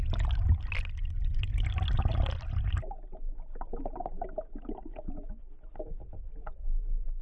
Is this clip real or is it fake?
real